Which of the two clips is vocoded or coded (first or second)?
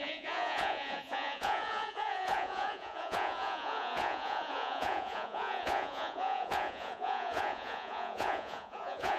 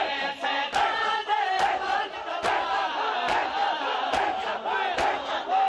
first